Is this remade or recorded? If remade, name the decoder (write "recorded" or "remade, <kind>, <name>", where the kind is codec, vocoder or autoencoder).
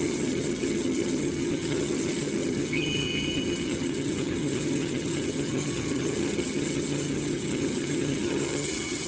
remade, vocoder, HiFi-GAN